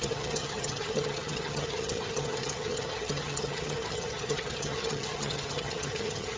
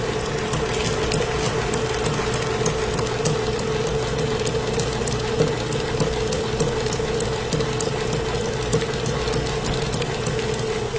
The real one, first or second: second